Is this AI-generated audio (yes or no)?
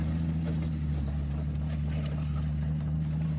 no